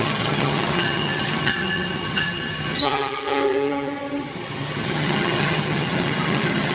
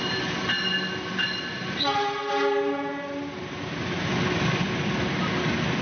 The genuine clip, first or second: second